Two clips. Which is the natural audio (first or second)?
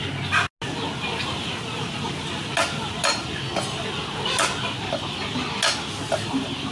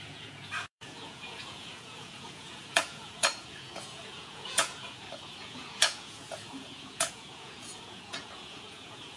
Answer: first